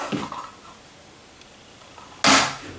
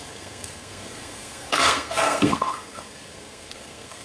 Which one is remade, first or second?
second